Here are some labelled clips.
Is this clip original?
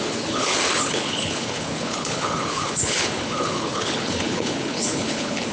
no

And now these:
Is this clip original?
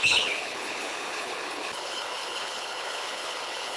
no